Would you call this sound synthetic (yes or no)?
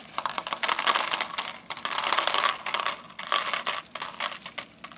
no